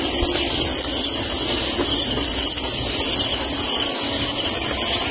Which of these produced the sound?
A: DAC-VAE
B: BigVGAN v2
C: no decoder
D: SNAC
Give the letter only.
C